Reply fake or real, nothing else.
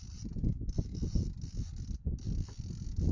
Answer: real